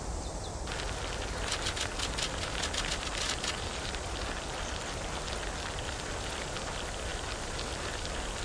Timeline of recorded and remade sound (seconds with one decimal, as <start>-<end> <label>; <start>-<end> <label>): 0.0-8.4 recorded